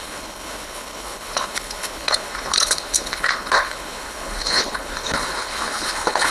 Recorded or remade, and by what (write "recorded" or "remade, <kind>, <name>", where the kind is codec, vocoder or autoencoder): remade, codec, HILCodec